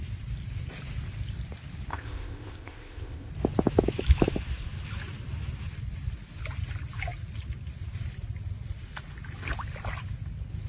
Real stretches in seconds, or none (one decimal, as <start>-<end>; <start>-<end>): 0.0-1.9; 3.3-10.7